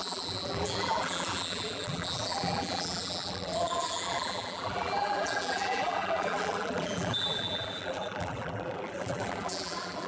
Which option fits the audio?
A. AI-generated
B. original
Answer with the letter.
A